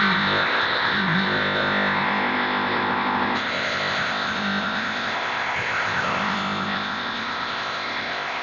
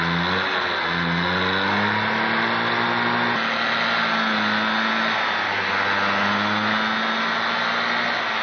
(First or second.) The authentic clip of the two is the second